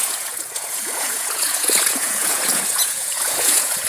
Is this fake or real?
fake